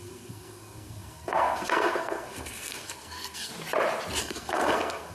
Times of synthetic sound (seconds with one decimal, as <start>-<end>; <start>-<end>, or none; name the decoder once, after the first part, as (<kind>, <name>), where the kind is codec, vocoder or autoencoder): 0.0-3.5 (codec, SNAC); 4.2-5.1